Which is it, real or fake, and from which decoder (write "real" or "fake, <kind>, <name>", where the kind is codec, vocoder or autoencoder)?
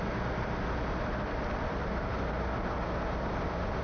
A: real